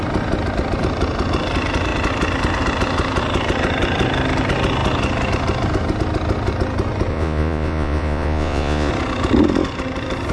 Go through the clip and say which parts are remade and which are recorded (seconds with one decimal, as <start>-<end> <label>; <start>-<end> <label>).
0.0-7.1 recorded; 7.1-8.9 remade; 8.9-10.3 recorded